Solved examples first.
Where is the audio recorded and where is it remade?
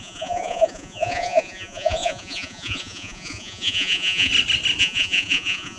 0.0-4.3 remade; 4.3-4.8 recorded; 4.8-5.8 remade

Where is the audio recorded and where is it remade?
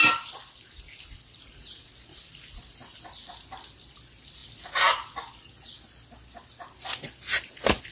0.0-7.9 recorded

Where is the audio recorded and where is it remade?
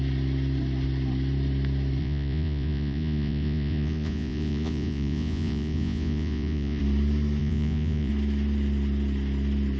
0.0-2.0 recorded; 2.0-6.8 remade; 6.8-7.4 recorded; 7.4-8.1 remade; 8.1-9.8 recorded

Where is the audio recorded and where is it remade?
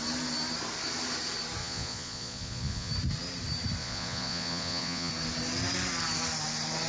0.0-1.6 recorded; 1.6-2.9 remade; 2.9-3.8 recorded; 3.8-5.1 remade; 5.1-6.9 recorded